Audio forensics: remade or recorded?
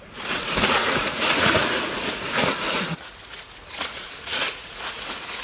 remade